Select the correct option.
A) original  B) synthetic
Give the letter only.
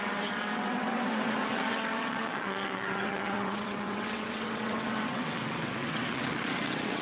B